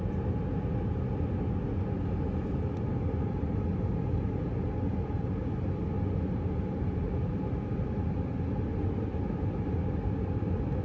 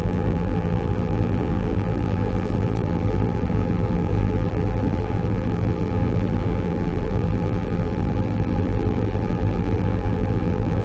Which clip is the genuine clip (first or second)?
first